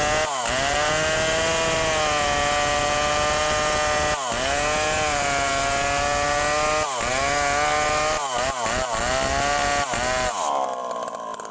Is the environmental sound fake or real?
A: real